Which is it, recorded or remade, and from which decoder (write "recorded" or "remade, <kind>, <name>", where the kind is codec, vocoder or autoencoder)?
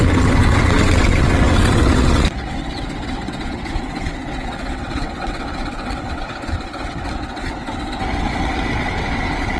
remade, vocoder, WaveNeXt